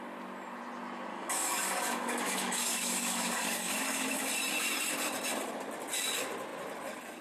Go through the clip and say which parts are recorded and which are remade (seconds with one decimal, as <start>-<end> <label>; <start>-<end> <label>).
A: 0.0-1.1 recorded; 1.1-4.3 remade; 4.3-7.2 recorded